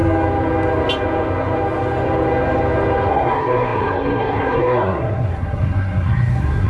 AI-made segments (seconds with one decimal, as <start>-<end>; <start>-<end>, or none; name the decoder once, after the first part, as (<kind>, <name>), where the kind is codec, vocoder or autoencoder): 3.1-6.7 (codec, SNAC)